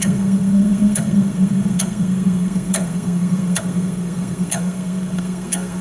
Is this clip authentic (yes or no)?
no